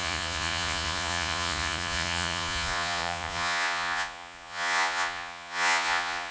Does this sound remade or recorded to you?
remade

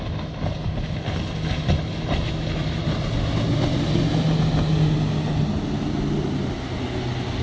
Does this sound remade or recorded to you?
recorded